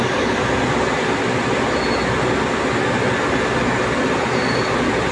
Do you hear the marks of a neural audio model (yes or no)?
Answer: no